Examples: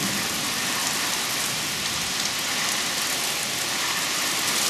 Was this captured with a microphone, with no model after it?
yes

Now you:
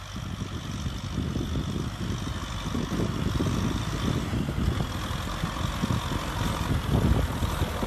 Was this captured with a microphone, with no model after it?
yes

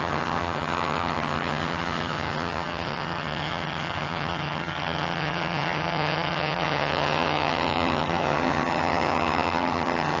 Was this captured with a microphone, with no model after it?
no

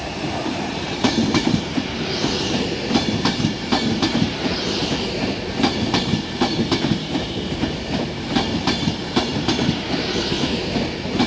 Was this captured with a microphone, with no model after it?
no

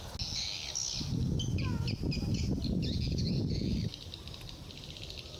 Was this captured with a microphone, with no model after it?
yes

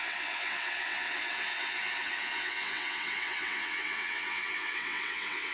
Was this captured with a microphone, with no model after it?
no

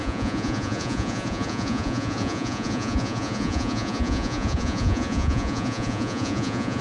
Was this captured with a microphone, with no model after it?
no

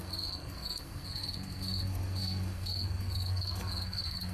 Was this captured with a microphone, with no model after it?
no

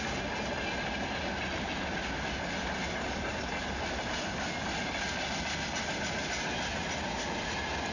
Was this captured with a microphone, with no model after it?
yes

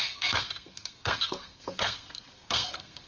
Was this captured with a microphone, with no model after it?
no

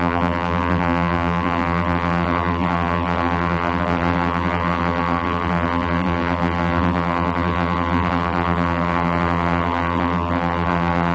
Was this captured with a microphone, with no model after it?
no